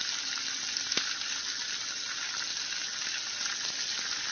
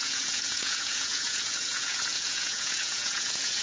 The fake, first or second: second